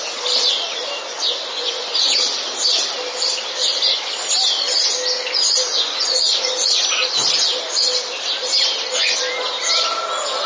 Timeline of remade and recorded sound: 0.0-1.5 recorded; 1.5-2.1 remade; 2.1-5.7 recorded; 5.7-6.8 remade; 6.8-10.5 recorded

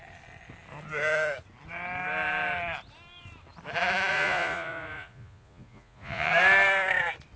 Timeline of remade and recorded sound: 0.0-4.1 recorded; 4.1-6.3 remade; 6.3-7.4 recorded

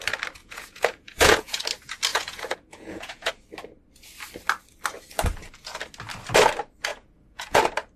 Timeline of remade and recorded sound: 0.0-0.4 recorded; 0.4-1.6 remade; 1.6-2.1 recorded; 2.1-3.3 remade; 3.3-6.9 recorded; 6.9-7.6 remade; 7.6-8.0 recorded

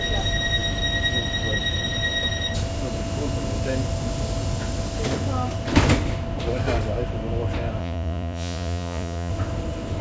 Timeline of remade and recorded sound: 0.0-7.8 recorded; 7.8-9.3 remade; 9.3-10.0 recorded

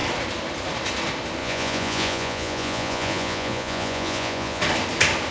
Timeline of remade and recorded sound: 0.0-1.4 recorded; 1.4-4.6 remade; 4.6-5.3 recorded

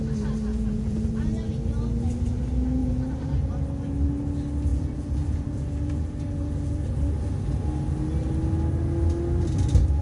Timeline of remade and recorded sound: 0.0-0.5 recorded; 0.5-1.5 remade; 1.5-2.8 recorded; 2.8-3.5 remade; 3.5-4.7 recorded; 4.7-7.0 remade; 7.0-10.0 recorded